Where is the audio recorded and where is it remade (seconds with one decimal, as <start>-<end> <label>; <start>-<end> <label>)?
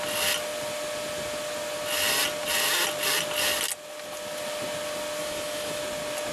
0.0-5.2 recorded; 5.2-5.8 remade; 5.8-6.3 recorded